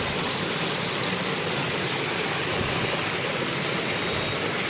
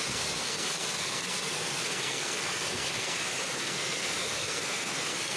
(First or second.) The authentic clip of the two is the first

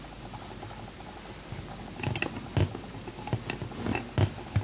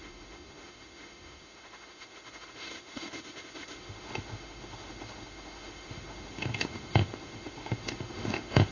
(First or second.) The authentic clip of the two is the first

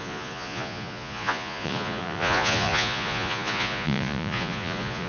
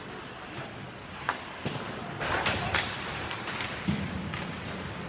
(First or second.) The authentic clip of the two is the second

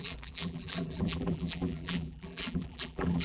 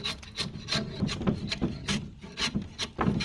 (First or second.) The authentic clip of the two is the second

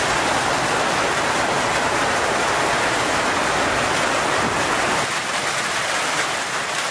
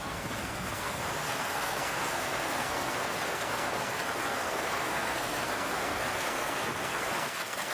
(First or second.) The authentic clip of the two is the first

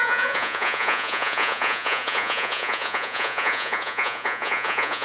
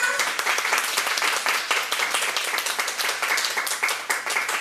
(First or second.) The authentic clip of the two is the second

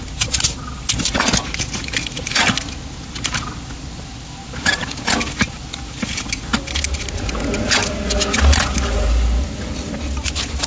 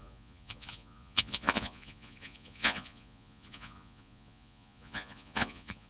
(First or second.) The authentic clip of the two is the first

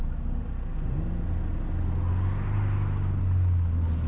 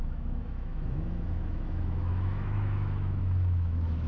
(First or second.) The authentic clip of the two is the first